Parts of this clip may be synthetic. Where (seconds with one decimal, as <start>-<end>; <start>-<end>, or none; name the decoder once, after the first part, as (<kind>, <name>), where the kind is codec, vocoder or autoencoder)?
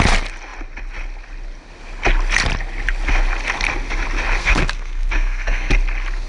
4.4-5.7 (codec, SNAC)